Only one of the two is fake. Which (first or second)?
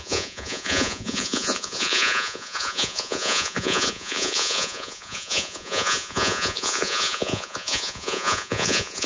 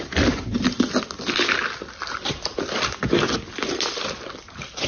first